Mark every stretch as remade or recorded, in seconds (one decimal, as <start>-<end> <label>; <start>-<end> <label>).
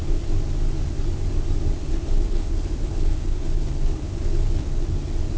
0.0-1.8 recorded; 1.8-5.0 remade; 5.0-5.4 recorded